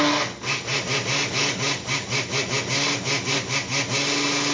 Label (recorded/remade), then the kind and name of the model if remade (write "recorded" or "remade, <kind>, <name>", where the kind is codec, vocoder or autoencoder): recorded